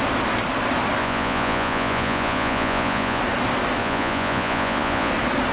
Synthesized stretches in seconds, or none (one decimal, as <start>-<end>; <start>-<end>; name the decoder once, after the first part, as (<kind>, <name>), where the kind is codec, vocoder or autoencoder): 1.0-3.2 (vocoder, Vocos); 3.8-5.1